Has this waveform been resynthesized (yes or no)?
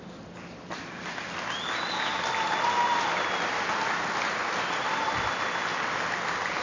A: no